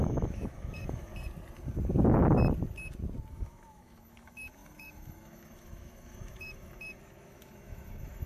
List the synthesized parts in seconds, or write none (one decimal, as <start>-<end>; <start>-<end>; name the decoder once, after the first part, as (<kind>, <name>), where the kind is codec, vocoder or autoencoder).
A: 0.0-1.1 (autoencoder, DAC-VAE); 3.3-8.3